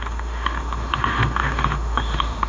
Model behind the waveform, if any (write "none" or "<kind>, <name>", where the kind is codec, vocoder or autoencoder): autoencoder, DAC-VAE